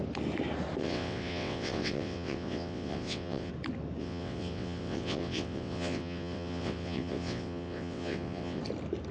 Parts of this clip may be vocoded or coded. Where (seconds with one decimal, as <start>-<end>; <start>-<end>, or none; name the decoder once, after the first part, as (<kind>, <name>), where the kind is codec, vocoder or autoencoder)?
0.8-3.5 (vocoder, WaveNeXt); 4.0-8.6